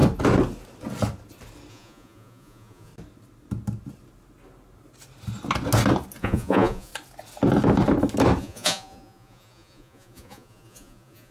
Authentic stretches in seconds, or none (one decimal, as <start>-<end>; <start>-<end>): 0.0-1.7; 2.9-6.2; 6.9-8.4